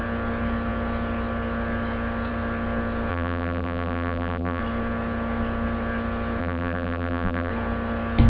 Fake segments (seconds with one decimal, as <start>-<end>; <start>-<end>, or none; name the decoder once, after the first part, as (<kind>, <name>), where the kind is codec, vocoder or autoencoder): 3.1-4.6 (vocoder, BigVGAN v2); 6.4-7.5